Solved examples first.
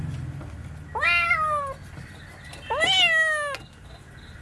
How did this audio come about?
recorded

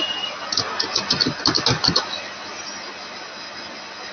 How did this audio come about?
recorded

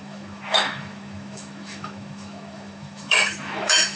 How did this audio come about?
remade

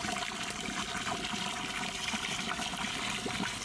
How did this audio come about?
recorded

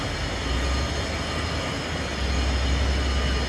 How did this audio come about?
recorded